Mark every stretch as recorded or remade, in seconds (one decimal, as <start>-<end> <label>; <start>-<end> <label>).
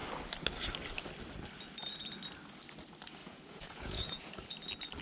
0.0-3.2 recorded; 3.2-4.3 remade; 4.3-5.0 recorded